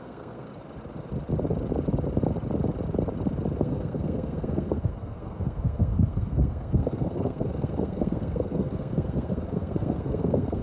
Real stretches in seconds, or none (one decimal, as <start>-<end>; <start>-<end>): 0.5-3.6